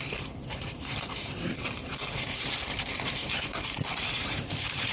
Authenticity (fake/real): fake